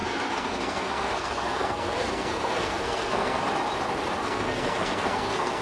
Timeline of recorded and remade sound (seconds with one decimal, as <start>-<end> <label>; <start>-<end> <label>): 0.0-3.4 remade; 3.4-4.2 recorded; 4.2-5.6 remade